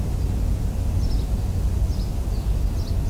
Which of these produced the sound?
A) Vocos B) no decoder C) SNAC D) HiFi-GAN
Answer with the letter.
B